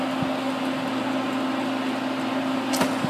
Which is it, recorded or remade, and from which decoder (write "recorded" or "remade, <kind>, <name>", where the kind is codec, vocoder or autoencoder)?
recorded